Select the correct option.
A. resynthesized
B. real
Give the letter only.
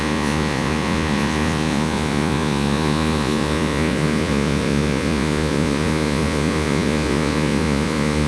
A